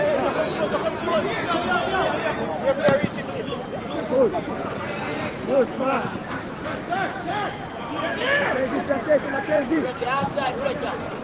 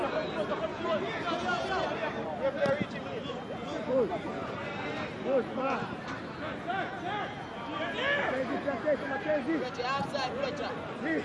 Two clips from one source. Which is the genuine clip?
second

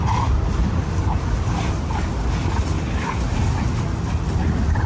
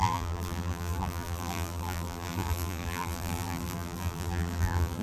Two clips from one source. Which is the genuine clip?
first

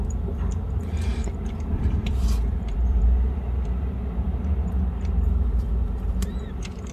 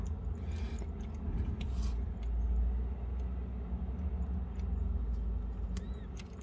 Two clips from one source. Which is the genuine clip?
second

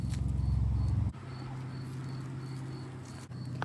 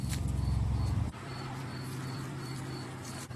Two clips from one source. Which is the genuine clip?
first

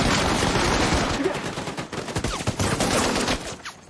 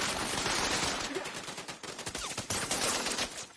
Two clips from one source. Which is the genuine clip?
first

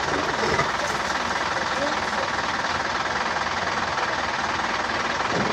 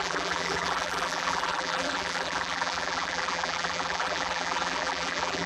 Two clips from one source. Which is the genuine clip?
first